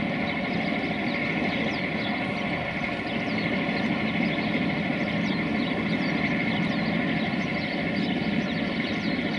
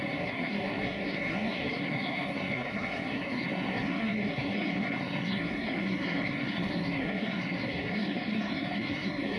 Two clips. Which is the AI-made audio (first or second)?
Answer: second